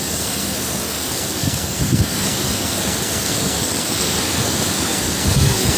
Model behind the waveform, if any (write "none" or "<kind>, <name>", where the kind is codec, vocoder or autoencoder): codec, SNAC